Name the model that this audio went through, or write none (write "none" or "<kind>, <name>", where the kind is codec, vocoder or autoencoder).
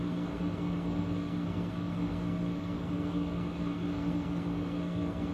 codec, SNAC